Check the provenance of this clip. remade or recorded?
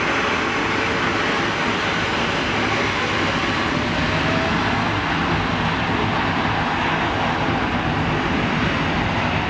recorded